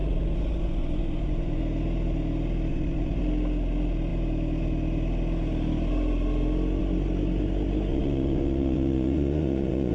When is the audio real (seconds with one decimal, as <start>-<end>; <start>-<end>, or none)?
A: 1.6-2.7; 3.2-7.9